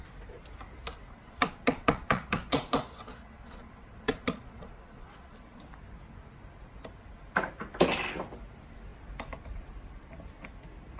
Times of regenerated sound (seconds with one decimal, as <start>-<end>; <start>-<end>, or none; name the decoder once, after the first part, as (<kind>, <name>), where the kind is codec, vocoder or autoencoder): 1.2-5.6 (vocoder, Vocos)